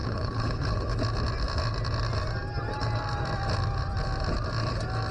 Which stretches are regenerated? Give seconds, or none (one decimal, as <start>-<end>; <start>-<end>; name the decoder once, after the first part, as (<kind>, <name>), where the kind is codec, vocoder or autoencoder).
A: 0.0-1.0 (codec, HILCodec)